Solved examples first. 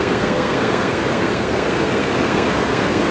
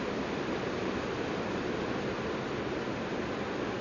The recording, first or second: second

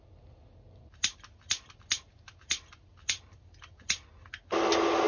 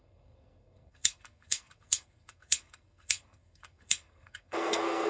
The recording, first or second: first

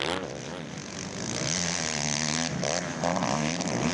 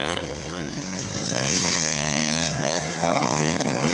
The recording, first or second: first